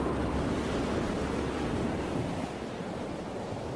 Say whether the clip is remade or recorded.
remade